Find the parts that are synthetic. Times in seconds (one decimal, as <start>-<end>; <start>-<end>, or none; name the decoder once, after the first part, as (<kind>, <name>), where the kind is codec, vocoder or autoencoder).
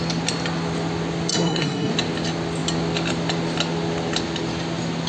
1.3-1.9 (codec, SNAC)